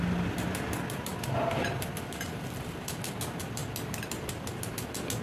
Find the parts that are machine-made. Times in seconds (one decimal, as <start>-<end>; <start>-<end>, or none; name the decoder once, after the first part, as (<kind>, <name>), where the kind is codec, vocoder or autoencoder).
none